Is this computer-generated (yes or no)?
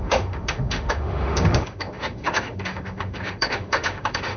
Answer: yes